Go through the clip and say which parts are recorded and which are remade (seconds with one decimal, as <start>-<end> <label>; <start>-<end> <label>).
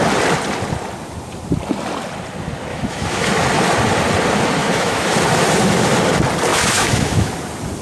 0.0-2.7 recorded; 2.7-3.3 remade; 3.3-4.6 recorded; 4.6-5.1 remade; 5.1-6.5 recorded; 6.5-7.3 remade; 7.3-7.8 recorded